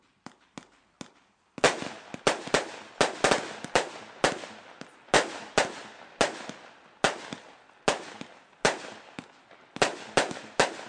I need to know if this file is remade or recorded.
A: recorded